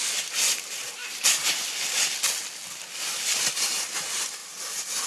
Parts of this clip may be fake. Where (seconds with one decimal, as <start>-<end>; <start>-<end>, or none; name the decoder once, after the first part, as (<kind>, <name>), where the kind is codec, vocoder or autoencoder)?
none